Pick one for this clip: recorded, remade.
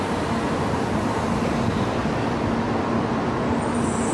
recorded